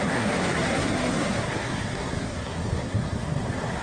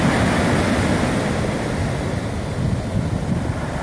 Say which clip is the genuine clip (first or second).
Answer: second